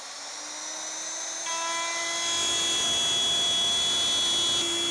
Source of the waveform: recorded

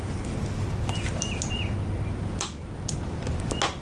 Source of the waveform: recorded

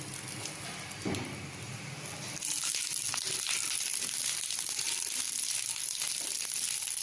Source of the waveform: recorded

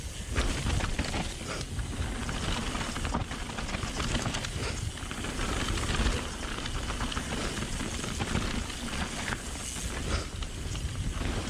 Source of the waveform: recorded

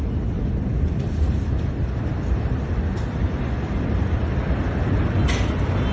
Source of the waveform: recorded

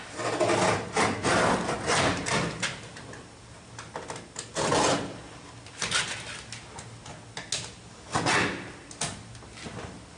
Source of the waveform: recorded